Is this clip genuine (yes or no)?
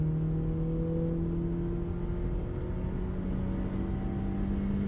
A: yes